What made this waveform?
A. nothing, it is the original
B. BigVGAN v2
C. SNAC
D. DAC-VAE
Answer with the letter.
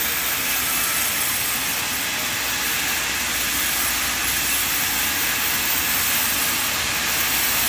A